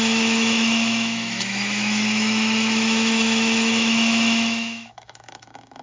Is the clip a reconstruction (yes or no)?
yes